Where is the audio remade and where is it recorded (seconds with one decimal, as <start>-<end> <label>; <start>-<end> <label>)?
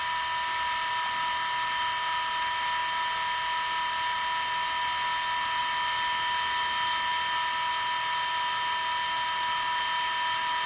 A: 0.0-10.7 recorded